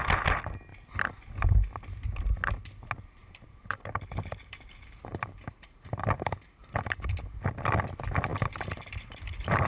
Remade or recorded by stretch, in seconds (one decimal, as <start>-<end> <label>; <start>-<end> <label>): 0.0-3.2 recorded; 3.2-7.2 remade; 7.2-8.3 recorded; 8.3-9.7 remade